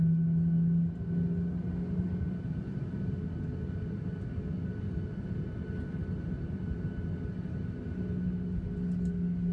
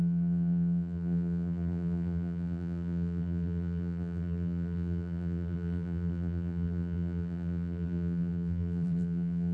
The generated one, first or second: second